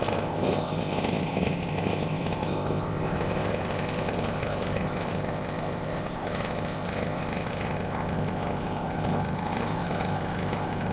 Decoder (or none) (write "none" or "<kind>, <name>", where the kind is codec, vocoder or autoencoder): codec, ZipCodec